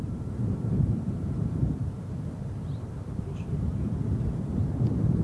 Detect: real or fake fake